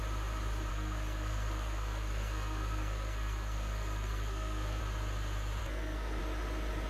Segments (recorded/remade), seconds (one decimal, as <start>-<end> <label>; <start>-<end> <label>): 0.0-0.7 recorded; 0.7-4.8 remade; 4.8-5.6 recorded; 5.6-6.2 remade; 6.2-6.9 recorded